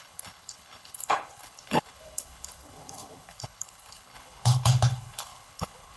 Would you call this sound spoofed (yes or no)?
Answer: yes